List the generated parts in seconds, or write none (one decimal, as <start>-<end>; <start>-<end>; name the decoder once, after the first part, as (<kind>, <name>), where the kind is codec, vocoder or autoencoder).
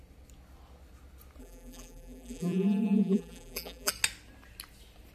1.4-3.9 (vocoder, BigVGAN v2)